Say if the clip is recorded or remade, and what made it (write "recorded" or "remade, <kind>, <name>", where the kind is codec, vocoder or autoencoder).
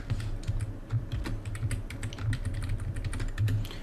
recorded